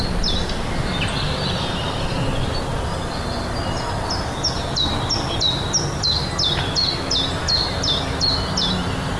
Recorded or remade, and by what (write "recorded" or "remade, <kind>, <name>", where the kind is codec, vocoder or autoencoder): recorded